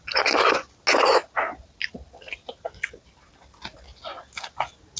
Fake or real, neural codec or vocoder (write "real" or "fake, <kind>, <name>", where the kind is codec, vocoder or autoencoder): real